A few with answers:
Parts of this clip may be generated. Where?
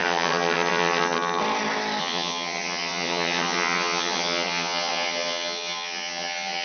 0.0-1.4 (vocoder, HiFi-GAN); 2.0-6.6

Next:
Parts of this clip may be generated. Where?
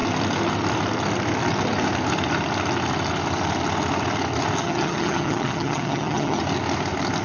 4.6-6.4 (vocoder, HiFi-GAN)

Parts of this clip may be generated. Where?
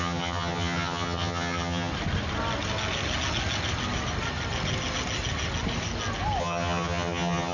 0.0-1.9 (vocoder, HiFi-GAN); 6.4-7.5